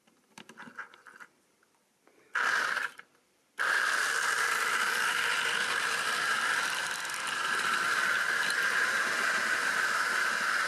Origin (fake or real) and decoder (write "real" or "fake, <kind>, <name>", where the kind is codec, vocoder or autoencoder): fake, vocoder, BigVGAN v2